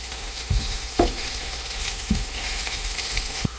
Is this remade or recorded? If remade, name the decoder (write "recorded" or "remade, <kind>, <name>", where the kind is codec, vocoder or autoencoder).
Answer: remade, autoencoder, DAC-VAE